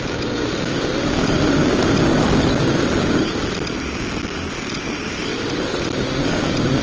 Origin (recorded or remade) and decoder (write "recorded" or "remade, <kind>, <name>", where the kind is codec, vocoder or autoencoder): recorded